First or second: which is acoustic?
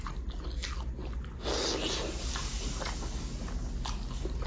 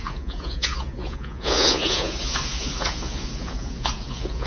first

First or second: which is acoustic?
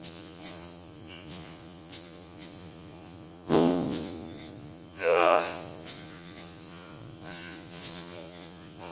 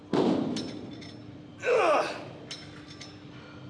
second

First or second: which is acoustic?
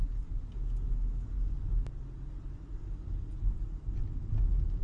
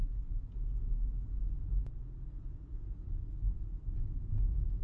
first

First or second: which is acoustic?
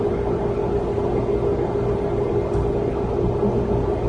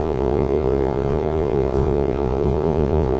first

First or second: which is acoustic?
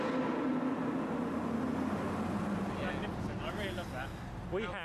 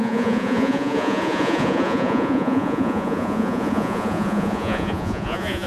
first